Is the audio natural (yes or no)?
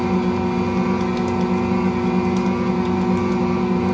yes